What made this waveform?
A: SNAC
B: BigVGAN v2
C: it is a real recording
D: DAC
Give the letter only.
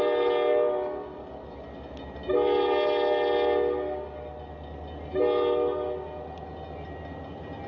C